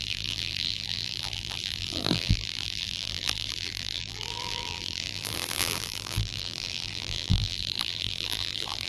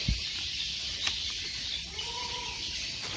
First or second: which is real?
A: second